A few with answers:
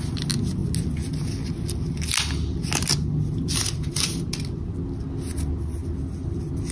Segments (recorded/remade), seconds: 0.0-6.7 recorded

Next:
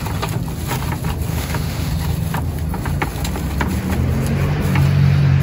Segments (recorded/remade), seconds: 0.0-1.3 recorded; 1.3-1.9 remade; 1.9-5.4 recorded

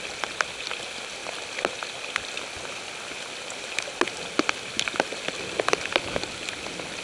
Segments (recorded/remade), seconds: 0.0-7.0 recorded

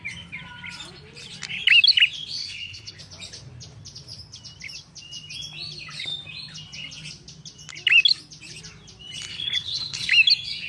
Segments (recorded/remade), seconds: 0.0-2.4 recorded; 2.4-3.0 remade; 3.0-9.3 recorded; 9.3-10.1 remade; 10.1-10.7 recorded

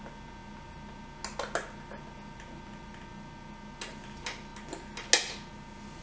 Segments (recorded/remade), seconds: 0.0-6.0 recorded